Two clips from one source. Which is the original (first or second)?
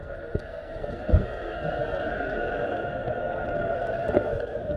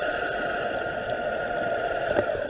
second